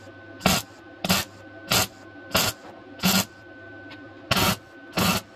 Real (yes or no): yes